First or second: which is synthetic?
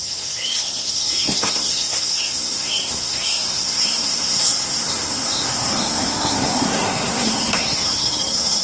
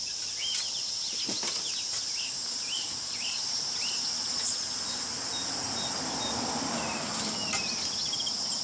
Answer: first